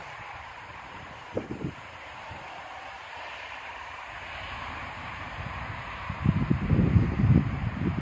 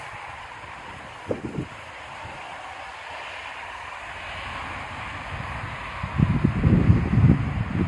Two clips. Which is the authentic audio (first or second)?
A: second